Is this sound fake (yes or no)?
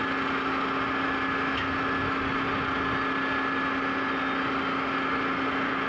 no